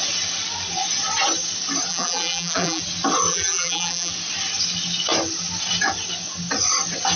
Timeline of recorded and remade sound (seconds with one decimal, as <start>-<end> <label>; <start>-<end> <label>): 0.0-1.9 recorded; 1.9-2.8 remade; 2.8-3.3 recorded; 3.3-4.1 remade; 4.1-7.2 recorded

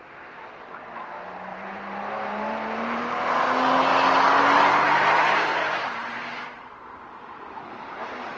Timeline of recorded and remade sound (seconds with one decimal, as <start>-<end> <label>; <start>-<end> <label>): 0.0-1.5 recorded; 1.5-3.0 remade; 3.0-5.5 recorded; 5.5-8.4 remade